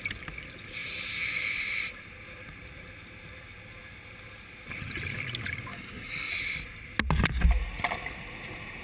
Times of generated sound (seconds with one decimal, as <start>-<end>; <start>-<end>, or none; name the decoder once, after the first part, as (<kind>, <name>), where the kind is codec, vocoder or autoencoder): 5.7-6.3 (codec, DAC)